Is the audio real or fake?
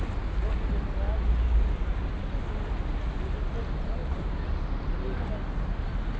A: real